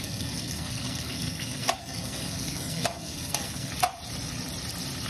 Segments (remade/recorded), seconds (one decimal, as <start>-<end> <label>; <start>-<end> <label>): 0.0-3.7 remade; 3.7-5.1 recorded